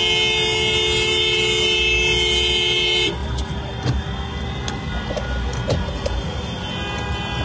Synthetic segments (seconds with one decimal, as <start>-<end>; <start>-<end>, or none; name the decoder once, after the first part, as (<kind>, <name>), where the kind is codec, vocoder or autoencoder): 3.2-3.9 (vocoder, BigVGAN v2)